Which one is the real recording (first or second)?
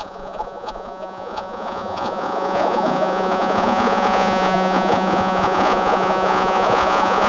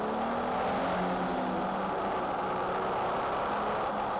second